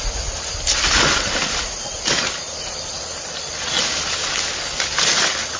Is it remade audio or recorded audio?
recorded